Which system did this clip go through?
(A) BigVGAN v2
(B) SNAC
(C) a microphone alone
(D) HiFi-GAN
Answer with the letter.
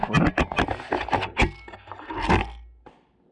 C